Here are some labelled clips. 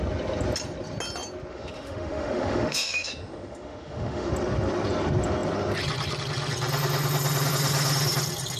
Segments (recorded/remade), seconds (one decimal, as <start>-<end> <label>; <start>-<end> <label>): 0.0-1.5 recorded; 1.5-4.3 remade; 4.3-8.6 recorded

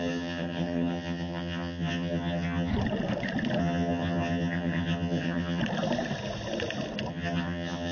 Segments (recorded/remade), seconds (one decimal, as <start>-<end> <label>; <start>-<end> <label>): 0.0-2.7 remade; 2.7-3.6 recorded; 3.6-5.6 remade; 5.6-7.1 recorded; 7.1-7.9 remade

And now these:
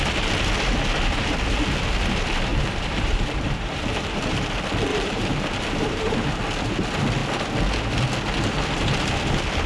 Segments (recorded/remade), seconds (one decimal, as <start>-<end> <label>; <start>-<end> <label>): 0.0-2.5 recorded; 2.5-4.4 remade; 4.4-4.9 recorded; 4.9-6.3 remade; 6.3-9.7 recorded